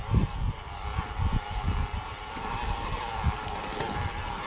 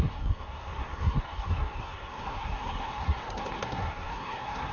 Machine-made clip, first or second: second